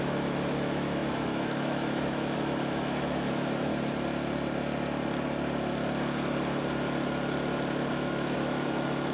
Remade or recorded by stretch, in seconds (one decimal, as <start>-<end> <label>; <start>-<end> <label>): 0.0-3.7 remade; 3.7-7.9 recorded; 7.9-9.1 remade